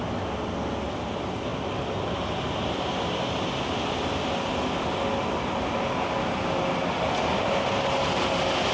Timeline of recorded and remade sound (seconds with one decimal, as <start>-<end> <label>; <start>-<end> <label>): 0.0-8.7 recorded